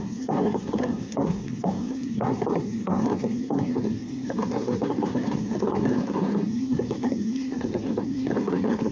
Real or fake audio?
fake